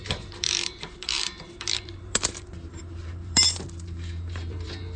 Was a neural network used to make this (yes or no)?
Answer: yes